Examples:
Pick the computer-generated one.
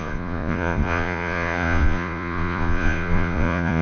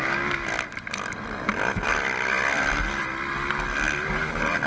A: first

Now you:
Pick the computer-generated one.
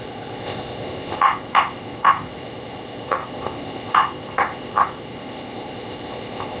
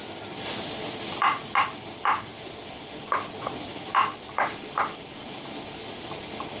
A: first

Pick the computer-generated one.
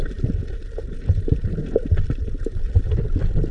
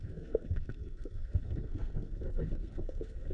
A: second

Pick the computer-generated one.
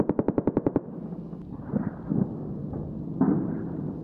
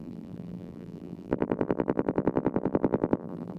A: second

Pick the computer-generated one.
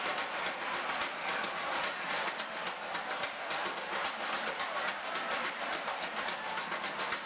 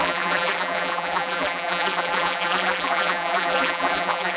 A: second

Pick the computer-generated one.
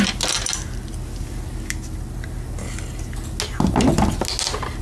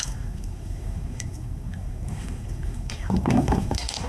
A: second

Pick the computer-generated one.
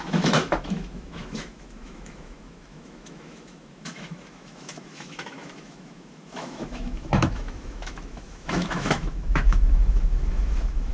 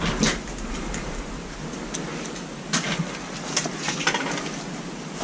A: first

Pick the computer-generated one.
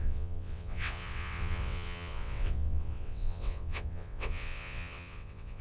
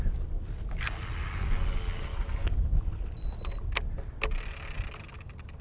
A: first